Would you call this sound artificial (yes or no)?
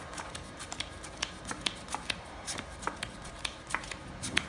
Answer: yes